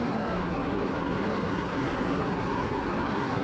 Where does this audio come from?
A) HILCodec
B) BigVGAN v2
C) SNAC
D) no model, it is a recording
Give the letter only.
C